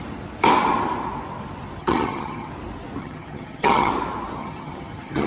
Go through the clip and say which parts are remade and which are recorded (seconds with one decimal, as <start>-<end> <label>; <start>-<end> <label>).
0.0-1.8 recorded; 1.8-2.5 remade; 2.5-3.0 recorded; 3.0-3.9 remade; 3.9-4.4 recorded; 4.4-5.3 remade